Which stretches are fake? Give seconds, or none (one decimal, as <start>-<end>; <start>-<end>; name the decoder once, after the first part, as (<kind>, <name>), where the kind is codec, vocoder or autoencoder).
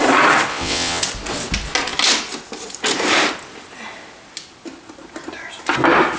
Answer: 0.5-1.0 (vocoder, WaveNeXt)